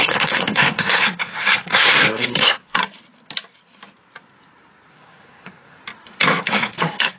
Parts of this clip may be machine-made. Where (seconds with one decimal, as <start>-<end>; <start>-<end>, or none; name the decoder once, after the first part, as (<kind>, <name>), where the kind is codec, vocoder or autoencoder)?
0.0-2.8 (codec, SNAC); 4.9-5.8; 6.4-7.2